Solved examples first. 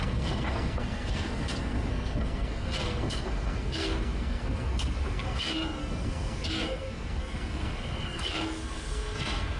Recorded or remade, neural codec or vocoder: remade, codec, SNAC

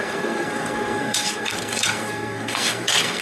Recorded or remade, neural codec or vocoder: remade, codec, SNAC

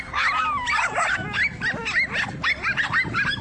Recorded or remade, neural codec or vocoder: recorded